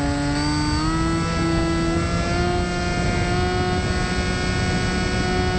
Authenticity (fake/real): real